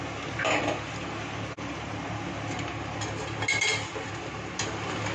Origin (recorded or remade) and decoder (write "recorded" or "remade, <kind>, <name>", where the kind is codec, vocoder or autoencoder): recorded